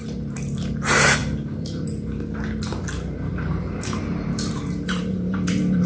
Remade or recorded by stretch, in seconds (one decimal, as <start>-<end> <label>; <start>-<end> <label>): 0.0-1.2 remade; 1.2-4.0 recorded; 4.0-5.9 remade